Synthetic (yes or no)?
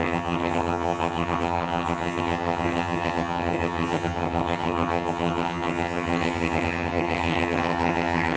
yes